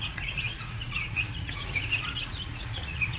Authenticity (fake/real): fake